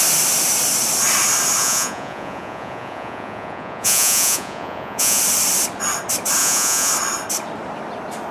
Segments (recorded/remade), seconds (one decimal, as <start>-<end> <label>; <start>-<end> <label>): 0.0-1.6 recorded; 1.6-5.2 remade; 5.2-6.4 recorded; 6.4-6.9 remade; 6.9-8.3 recorded